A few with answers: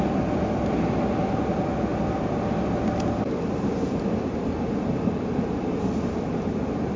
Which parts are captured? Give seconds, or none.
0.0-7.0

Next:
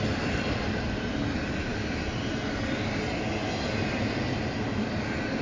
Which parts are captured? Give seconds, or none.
0.0-5.4

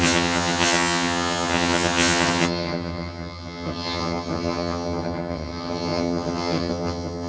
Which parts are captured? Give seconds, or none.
none